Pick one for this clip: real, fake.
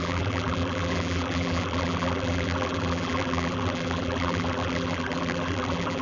fake